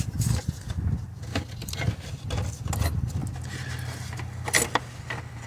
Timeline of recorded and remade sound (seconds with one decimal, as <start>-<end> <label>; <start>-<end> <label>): 0.0-5.5 recorded